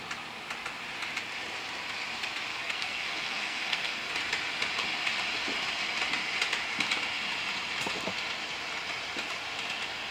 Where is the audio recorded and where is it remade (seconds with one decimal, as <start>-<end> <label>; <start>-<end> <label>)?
0.0-2.5 recorded; 2.5-4.1 remade; 4.1-10.1 recorded